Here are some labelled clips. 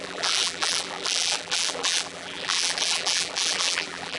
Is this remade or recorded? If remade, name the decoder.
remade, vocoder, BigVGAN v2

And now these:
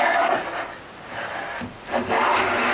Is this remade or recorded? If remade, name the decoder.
recorded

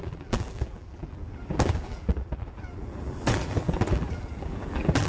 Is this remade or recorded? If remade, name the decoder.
remade, vocoder, BigVGAN v2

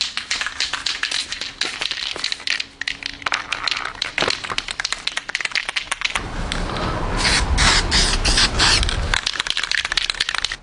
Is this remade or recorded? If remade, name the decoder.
recorded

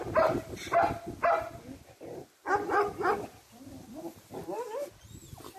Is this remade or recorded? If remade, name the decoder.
remade, vocoder, BigVGAN v2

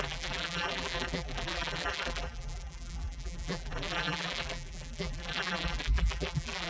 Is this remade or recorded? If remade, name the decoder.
remade, vocoder, BigVGAN v2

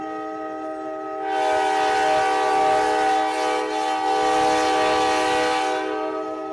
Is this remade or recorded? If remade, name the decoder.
recorded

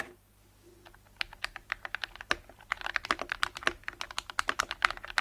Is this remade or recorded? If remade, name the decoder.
remade, vocoder, BigVGAN v2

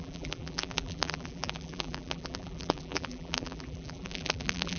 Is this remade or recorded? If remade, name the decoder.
remade, vocoder, BigVGAN v2